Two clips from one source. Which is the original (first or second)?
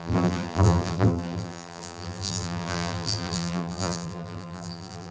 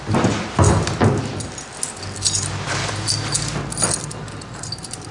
second